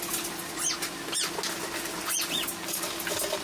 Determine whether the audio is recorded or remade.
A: recorded